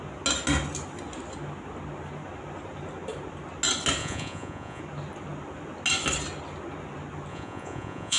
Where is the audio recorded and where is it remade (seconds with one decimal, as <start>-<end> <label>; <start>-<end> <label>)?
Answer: 0.0-4.0 recorded; 4.0-4.8 remade; 4.8-7.3 recorded; 7.3-8.2 remade